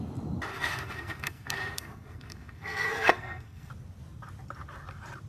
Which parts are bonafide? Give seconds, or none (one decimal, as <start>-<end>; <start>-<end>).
0.0-0.5; 3.7-5.3